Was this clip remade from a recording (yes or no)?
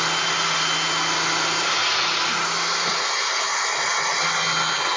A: no